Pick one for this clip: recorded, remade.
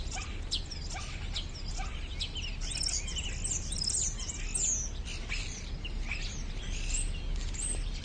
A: recorded